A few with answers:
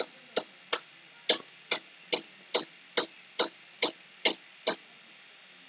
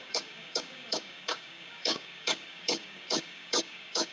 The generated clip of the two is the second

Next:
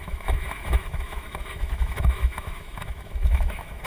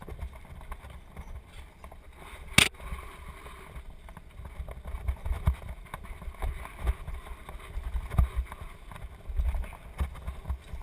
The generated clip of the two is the first